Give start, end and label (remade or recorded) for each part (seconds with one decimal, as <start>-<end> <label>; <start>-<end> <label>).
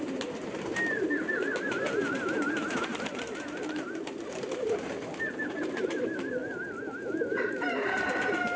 0.0-0.7 remade; 0.7-1.5 recorded; 1.5-6.4 remade; 6.4-7.5 recorded; 7.5-8.6 remade